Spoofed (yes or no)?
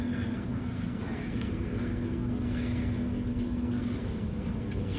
yes